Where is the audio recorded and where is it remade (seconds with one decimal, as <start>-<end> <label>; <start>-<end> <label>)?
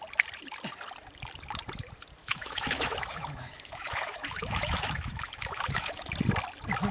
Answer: 0.0-2.2 recorded; 2.2-6.0 remade; 6.0-6.9 recorded